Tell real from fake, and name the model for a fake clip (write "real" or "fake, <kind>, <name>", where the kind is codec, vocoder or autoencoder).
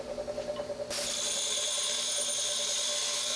fake, vocoder, BigVGAN v2